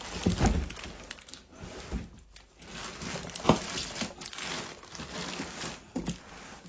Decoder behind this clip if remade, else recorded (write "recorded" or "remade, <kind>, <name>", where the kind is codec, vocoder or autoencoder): recorded